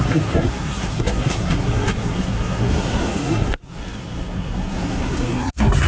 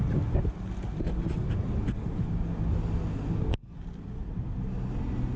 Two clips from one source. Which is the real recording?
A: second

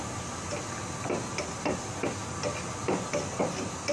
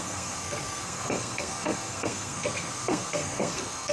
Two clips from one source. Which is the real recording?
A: first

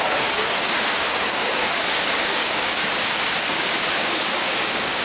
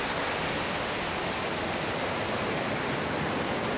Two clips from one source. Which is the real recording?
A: second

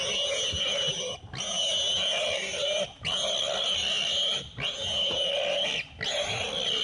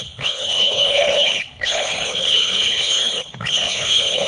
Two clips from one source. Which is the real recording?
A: first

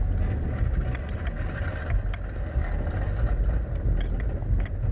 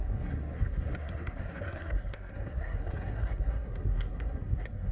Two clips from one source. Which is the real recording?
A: first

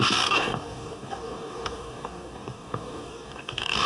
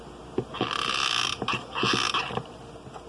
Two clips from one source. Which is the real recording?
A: second